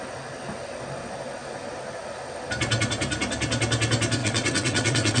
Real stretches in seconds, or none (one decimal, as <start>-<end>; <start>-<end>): 0.0-4.2